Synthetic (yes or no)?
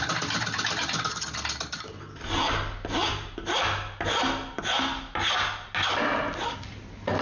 no